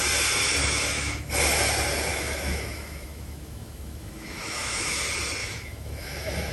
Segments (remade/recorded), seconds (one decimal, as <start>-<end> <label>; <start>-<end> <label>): 0.0-0.6 recorded; 0.6-1.3 remade; 1.3-2.1 recorded; 2.1-5.0 remade; 5.0-5.4 recorded; 5.4-6.5 remade